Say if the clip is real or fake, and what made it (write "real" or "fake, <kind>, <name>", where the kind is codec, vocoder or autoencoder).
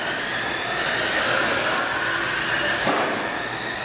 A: real